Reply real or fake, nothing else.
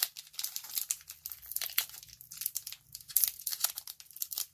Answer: real